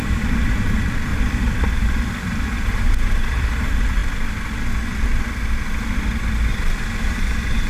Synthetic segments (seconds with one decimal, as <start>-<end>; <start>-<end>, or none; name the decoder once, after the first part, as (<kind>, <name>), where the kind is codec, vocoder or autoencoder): 0.0-1.1 (vocoder, BigVGAN v2); 1.7-4.0; 6.5-7.7